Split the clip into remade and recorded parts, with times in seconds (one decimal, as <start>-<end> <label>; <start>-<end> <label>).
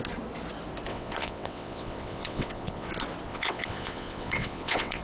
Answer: 0.0-0.9 recorded; 0.9-2.9 remade; 2.9-3.3 recorded; 3.3-5.0 remade